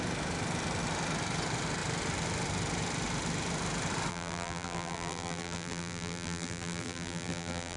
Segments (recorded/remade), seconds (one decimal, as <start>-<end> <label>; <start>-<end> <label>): 0.0-4.1 recorded; 4.1-7.8 remade